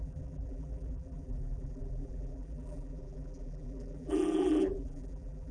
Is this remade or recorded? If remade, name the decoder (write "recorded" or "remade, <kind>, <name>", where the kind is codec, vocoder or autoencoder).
remade, vocoder, BigVGAN v2